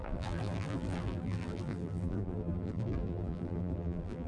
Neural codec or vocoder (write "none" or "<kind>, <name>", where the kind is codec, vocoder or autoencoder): vocoder, BigVGAN v2